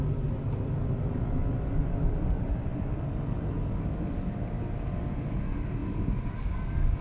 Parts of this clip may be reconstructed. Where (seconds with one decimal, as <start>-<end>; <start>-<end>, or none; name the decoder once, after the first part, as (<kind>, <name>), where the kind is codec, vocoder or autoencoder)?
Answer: none